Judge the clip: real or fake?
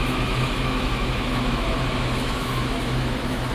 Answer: fake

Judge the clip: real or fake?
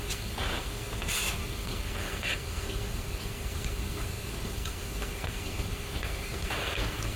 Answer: fake